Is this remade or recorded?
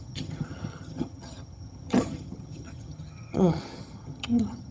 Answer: remade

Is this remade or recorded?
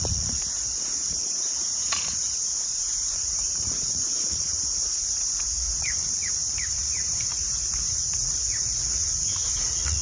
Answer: remade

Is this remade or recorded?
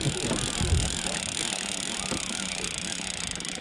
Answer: recorded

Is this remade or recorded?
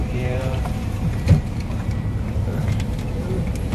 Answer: remade